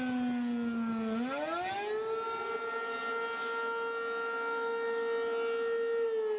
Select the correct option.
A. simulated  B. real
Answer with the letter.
B